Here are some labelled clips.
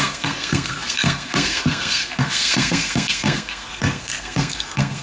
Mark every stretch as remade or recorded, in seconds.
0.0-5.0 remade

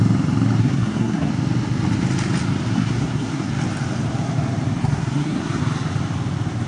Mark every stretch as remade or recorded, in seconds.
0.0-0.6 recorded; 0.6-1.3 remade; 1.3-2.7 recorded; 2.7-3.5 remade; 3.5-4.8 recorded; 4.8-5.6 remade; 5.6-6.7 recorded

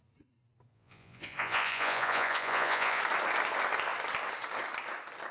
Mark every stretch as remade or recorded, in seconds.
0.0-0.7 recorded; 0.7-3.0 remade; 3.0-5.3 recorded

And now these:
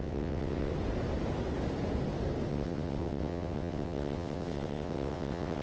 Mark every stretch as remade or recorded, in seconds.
0.0-0.7 remade; 0.7-2.5 recorded; 2.5-5.6 remade

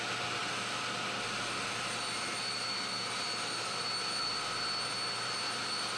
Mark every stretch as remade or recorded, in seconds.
0.0-6.0 recorded

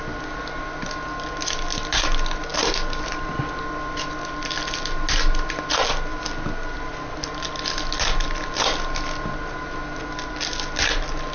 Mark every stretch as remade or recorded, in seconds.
0.0-11.3 recorded

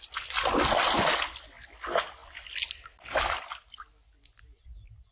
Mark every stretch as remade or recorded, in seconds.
0.0-5.1 recorded

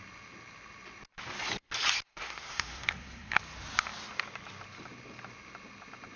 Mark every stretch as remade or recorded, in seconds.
0.0-2.1 recorded; 2.1-3.4 remade; 3.4-6.2 recorded